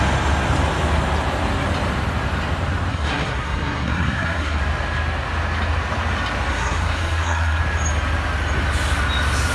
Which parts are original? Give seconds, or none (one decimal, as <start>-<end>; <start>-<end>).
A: 0.0-2.9; 4.6-6.5; 7.6-9.5